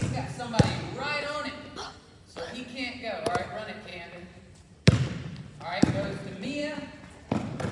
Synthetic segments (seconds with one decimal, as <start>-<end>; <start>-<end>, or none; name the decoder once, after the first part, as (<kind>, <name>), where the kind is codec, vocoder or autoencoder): 3.9-5.9 (vocoder, BigVGAN v2)